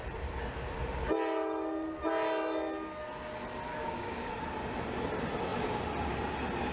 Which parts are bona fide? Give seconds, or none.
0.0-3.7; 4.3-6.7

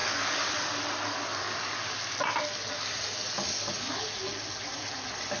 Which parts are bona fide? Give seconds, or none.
0.5-1.1; 2.0-3.4; 4.0-5.4

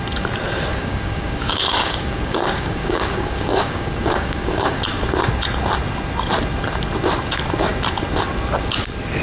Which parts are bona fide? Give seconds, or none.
0.0-0.7; 4.8-9.2

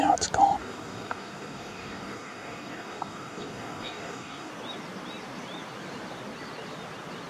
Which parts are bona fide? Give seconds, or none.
0.0-0.6; 4.5-7.3

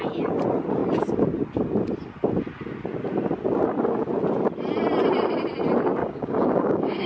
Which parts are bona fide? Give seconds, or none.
0.0-6.0

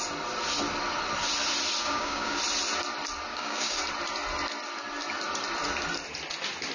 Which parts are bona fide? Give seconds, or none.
0.0-1.8; 2.4-3.3; 3.8-6.7